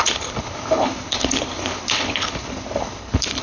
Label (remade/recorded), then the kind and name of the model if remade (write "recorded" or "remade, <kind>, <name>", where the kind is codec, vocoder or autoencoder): remade, codec, HILCodec